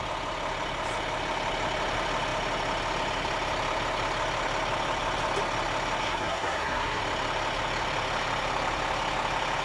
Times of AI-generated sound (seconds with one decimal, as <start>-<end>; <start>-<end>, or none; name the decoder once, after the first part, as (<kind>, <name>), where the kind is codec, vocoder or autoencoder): 6.0-7.0 (codec, SNAC)